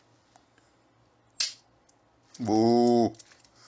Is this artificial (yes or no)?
no